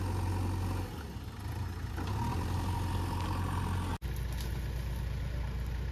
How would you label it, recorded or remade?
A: recorded